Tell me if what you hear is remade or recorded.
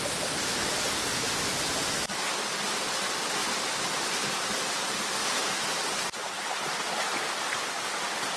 recorded